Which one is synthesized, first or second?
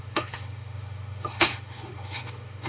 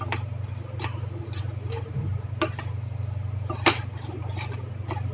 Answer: first